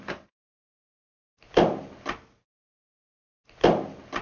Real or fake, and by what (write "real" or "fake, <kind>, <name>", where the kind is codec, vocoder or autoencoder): real